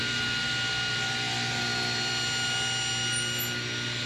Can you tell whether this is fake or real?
real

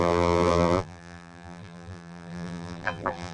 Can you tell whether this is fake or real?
fake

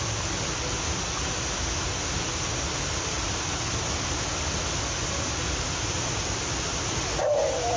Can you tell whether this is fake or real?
real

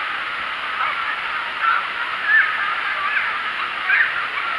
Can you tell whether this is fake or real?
real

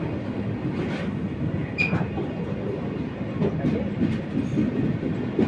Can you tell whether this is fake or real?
real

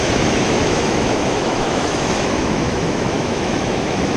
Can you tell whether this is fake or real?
fake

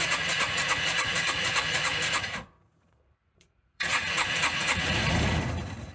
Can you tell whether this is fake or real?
fake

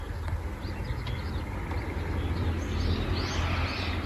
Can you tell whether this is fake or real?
real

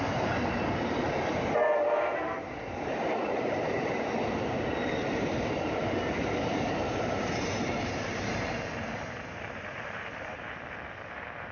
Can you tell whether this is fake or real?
fake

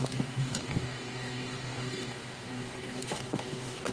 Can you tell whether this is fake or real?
fake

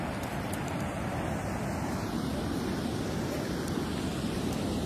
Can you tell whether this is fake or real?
real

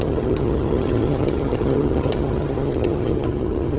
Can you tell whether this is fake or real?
fake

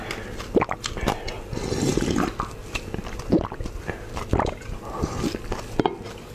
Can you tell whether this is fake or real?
real